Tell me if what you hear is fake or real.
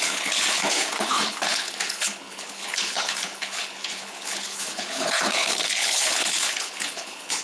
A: fake